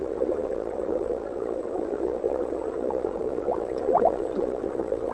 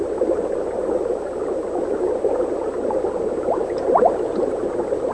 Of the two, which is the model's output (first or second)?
first